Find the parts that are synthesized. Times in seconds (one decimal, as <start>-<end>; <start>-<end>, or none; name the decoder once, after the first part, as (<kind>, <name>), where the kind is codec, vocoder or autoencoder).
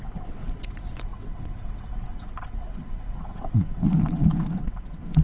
0.0-5.2 (vocoder, WaveNeXt)